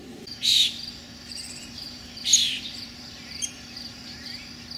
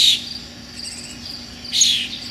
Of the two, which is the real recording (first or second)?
second